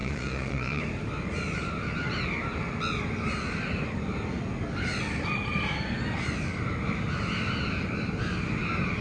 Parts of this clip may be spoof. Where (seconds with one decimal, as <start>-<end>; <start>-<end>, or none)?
0.0-0.8